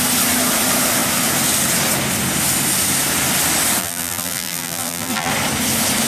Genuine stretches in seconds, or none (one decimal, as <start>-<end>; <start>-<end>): 0.0-3.8; 5.3-6.1